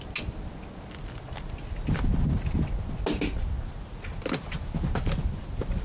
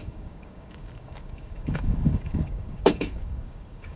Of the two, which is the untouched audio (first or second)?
first